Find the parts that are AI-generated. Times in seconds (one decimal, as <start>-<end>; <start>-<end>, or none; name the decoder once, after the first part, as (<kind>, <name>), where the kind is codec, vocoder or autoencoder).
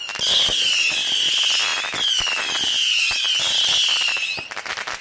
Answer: none